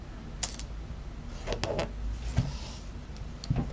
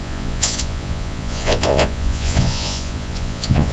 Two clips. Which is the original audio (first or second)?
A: first